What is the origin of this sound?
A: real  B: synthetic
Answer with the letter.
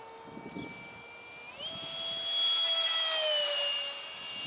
A